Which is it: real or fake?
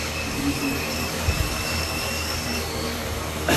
fake